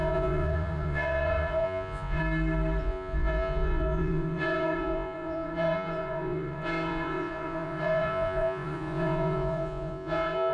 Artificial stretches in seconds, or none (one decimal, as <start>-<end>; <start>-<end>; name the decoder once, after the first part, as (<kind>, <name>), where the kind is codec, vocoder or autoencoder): 0.0-2.2 (vocoder, Vocos); 2.8-10.5